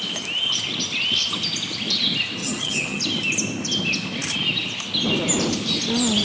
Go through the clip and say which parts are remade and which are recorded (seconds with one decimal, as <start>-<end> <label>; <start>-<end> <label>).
0.0-2.4 recorded; 2.4-3.0 remade; 3.0-6.2 recorded